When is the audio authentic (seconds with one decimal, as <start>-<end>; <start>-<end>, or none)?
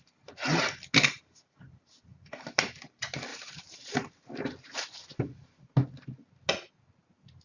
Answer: 0.0-2.1; 2.7-3.3; 4.1-7.4